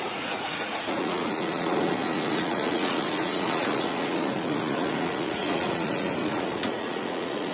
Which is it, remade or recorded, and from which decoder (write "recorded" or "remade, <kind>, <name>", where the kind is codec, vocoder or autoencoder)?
remade, vocoder, Vocos